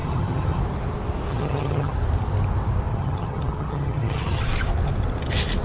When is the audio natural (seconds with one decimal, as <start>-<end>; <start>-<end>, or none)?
0.6-1.3; 1.9-2.9; 4.4-5.6